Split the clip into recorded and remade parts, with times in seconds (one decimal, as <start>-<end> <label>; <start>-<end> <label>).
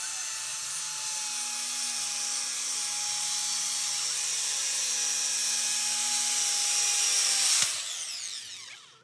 0.0-9.0 recorded